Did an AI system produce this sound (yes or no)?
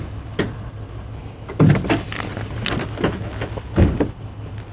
no